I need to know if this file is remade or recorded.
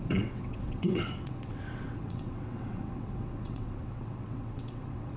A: remade